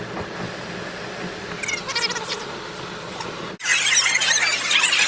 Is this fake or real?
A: real